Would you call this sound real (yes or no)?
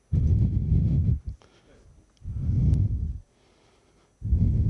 yes